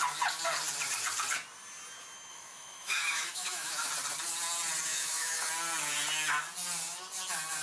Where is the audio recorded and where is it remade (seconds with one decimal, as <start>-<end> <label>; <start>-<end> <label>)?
0.0-2.3 recorded; 2.3-3.9 remade; 3.9-4.9 recorded; 4.9-5.5 remade; 5.5-7.6 recorded